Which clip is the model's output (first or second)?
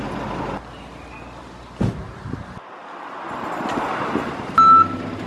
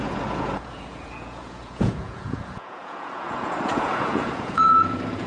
second